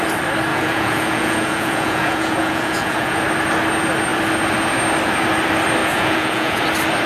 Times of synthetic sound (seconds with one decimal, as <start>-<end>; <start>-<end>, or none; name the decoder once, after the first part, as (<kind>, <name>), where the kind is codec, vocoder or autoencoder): 0.5-3.2 (vocoder, Vocos); 5.8-6.6